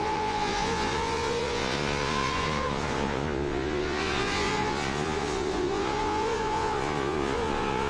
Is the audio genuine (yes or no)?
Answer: no